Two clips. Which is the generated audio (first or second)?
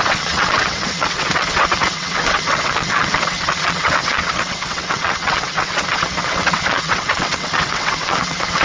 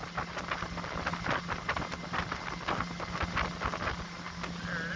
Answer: first